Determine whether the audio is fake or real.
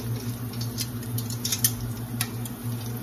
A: real